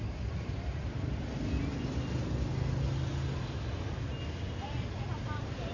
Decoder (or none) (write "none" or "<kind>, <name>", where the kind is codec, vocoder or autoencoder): none